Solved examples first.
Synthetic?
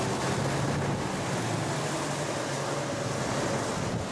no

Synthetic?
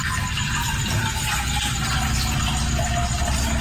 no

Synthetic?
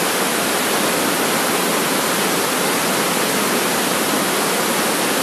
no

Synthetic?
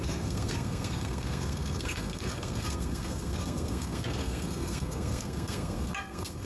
yes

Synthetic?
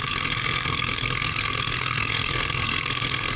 yes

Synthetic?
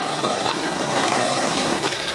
yes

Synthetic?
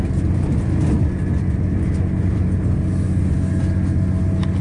no